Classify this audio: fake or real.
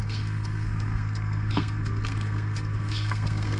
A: fake